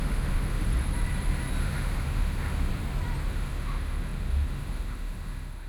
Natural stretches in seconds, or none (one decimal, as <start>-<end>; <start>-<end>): 0.7-1.6; 2.7-3.3